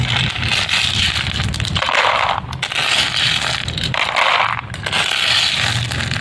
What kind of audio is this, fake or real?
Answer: real